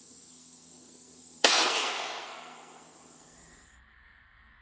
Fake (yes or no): yes